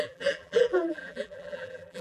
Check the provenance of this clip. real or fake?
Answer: fake